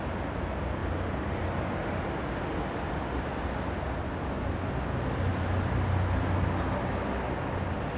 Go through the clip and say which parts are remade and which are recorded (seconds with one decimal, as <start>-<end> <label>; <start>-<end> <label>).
0.0-8.0 recorded